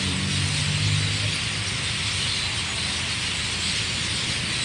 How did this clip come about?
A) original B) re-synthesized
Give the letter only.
A